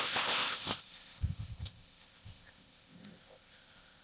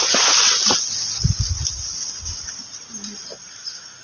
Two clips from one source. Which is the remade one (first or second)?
first